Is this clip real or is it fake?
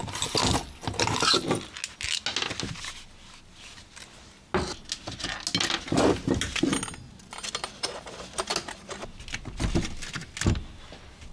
real